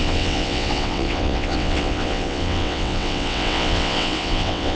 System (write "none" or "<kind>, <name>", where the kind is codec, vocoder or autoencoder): vocoder, WaveNeXt